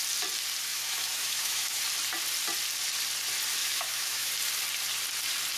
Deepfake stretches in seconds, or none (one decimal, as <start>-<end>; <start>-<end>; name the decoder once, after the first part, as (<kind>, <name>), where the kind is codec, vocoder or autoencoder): 0.7-1.8 (autoencoder, DAC-VAE); 3.6-4.3